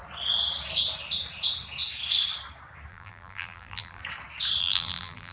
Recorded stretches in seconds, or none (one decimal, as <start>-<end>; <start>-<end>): 0.0-2.9; 4.0-4.6